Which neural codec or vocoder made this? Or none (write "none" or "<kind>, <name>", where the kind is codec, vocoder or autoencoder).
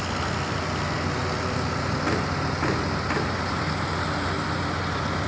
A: none